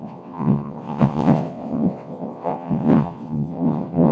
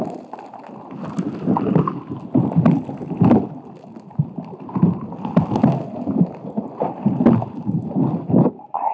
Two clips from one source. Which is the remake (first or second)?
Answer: first